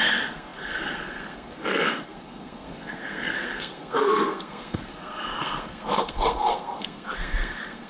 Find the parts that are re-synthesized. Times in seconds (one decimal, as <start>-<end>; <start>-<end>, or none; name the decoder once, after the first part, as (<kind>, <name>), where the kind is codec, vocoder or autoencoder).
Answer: 0.0-7.9 (codec, SNAC)